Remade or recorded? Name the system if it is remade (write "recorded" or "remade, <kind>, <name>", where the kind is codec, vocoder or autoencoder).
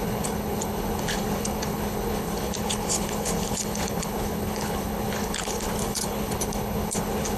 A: remade, codec, HILCodec